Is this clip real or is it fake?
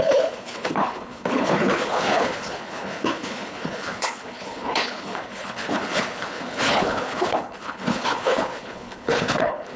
fake